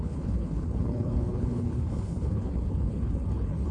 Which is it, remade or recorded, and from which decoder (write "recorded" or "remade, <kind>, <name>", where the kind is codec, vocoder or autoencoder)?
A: remade, codec, HILCodec